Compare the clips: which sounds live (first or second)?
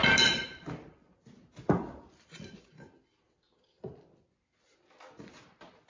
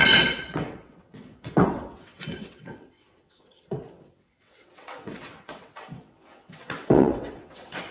first